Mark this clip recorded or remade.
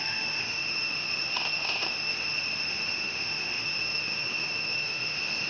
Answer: remade